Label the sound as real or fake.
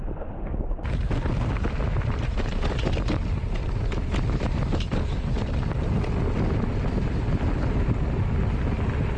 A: real